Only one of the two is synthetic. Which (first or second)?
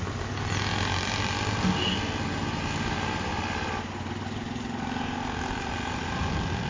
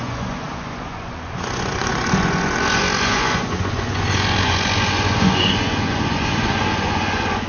second